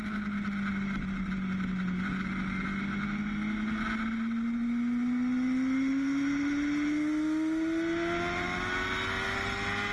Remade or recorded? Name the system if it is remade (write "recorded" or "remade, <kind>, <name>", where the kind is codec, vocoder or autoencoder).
recorded